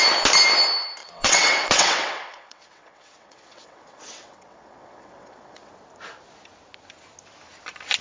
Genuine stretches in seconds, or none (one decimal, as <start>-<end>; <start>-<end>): 0.0-1.0; 5.7-8.0